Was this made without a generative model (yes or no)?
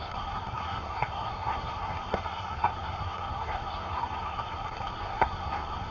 no